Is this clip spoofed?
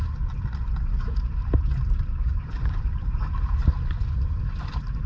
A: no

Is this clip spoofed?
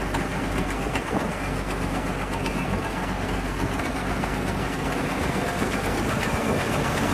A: yes